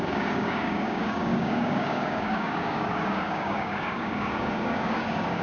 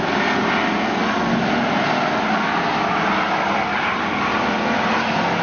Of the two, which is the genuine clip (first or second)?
second